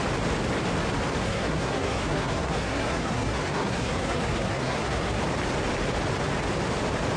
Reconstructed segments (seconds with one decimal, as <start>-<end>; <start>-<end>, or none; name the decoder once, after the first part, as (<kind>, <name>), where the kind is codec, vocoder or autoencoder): 1.2-5.2 (codec, SNAC)